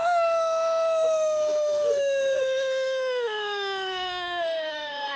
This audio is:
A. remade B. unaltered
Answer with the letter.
A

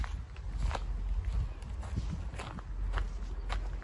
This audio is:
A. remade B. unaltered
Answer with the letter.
B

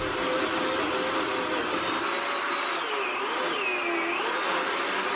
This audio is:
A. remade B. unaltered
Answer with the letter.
B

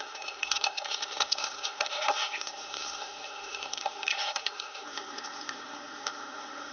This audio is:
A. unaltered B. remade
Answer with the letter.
B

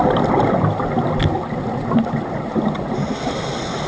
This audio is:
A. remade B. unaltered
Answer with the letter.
B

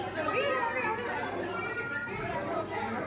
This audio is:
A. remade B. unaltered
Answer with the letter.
B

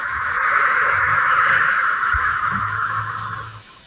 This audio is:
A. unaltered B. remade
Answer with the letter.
B